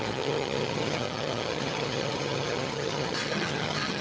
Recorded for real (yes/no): no